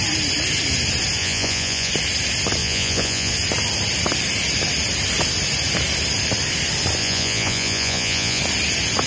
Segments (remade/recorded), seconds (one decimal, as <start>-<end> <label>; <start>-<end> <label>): 0.0-1.2 recorded; 1.2-1.9 remade; 1.9-2.6 recorded; 2.6-3.3 remade; 3.3-7.0 recorded; 7.0-8.4 remade; 8.4-9.1 recorded